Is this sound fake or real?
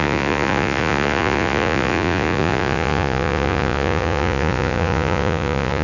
fake